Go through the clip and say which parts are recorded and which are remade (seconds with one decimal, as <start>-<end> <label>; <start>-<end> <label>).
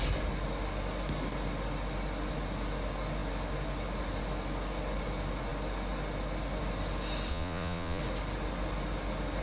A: 0.0-7.3 recorded; 7.3-8.0 remade; 8.0-9.4 recorded